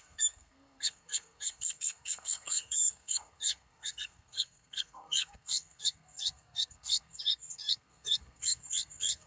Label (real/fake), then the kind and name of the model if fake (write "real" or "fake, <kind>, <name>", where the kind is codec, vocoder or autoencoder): fake, codec, SNAC